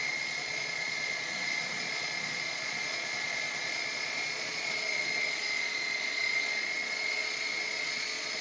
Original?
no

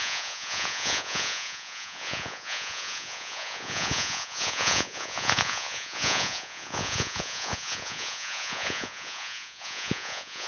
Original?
no